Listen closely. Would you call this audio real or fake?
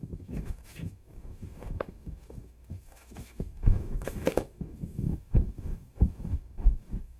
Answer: fake